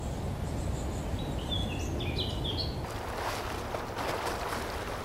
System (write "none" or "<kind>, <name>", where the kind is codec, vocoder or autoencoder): none